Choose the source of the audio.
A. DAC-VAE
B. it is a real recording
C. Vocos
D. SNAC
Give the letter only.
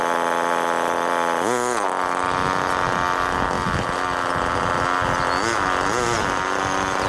B